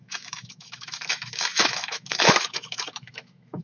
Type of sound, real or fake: fake